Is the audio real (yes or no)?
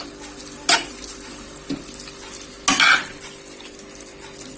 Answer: yes